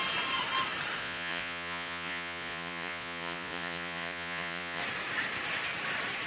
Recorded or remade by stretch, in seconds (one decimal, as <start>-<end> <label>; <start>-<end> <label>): 0.0-1.0 recorded; 1.0-4.8 remade; 4.8-6.3 recorded